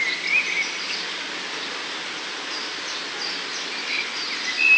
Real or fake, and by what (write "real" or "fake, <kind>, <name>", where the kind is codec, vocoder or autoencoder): real